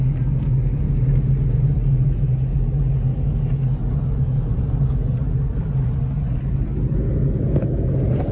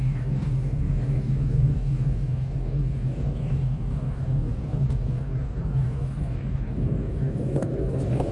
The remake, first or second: second